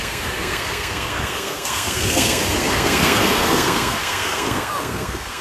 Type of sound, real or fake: fake